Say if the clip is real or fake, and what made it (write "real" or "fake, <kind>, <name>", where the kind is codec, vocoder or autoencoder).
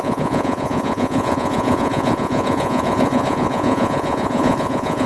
fake, vocoder, Vocos